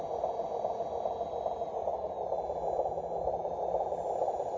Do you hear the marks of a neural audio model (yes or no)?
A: no